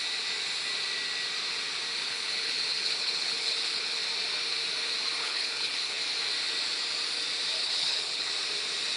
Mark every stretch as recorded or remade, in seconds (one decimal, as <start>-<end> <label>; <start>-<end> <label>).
0.0-2.0 recorded; 2.0-4.0 remade; 4.0-5.2 recorded; 5.2-6.0 remade; 6.0-7.6 recorded; 7.6-8.3 remade; 8.3-9.0 recorded